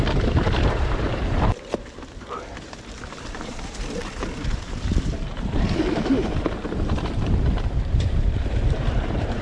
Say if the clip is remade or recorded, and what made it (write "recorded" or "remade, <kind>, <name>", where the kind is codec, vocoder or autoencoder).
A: remade, vocoder, BigVGAN v2